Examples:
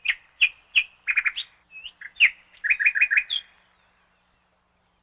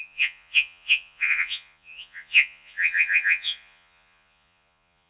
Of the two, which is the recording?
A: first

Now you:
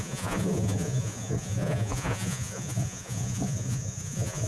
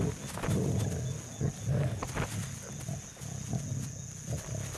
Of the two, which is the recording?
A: second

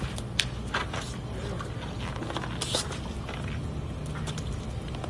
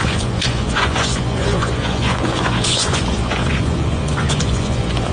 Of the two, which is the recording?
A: first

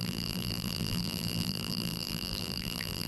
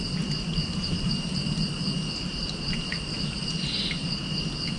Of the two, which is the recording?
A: second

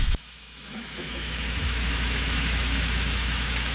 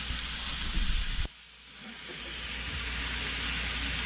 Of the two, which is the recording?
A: second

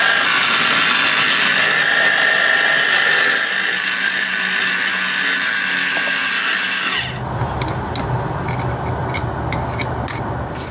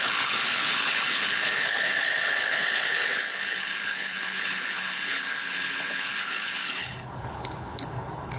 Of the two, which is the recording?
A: first